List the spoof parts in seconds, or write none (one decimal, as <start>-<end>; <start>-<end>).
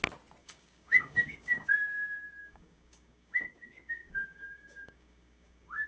0.4-1.7; 2.4-5.9